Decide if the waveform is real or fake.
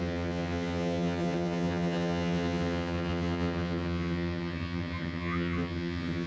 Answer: fake